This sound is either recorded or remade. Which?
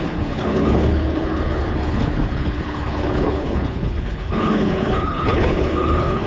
remade